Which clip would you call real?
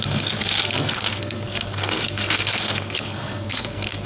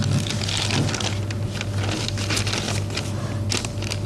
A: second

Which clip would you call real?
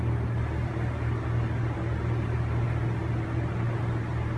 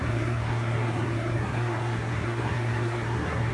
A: first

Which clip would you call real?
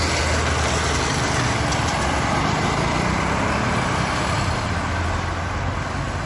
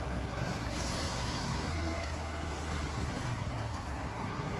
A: first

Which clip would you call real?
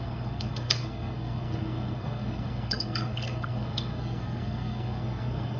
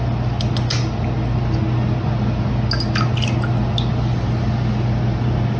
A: second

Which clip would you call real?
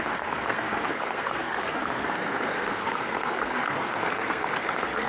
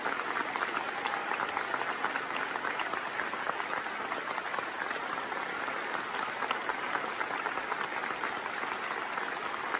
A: second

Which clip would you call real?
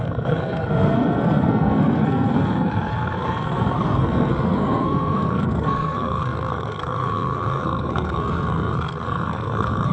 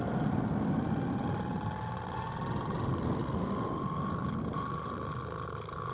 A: second